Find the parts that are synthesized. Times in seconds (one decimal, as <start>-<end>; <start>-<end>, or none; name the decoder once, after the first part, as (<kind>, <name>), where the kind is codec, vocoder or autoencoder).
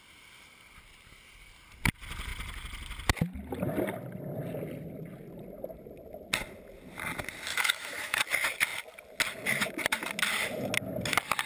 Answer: 7.5-8.2 (autoencoder, DAC-VAE)